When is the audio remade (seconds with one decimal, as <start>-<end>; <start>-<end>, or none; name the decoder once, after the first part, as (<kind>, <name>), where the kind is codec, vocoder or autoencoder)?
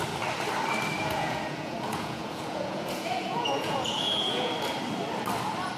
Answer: 1.0-4.5 (vocoder, Vocos)